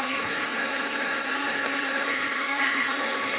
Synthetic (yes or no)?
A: yes